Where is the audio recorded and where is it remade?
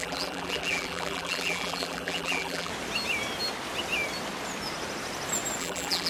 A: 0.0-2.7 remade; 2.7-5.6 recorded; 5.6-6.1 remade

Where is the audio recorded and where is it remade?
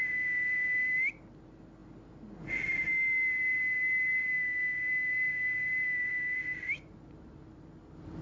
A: 0.0-8.2 recorded